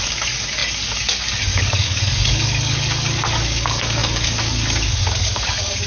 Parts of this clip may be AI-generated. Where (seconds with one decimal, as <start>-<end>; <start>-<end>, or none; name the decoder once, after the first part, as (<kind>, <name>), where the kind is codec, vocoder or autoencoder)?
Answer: 0.0-5.9 (codec, DAC)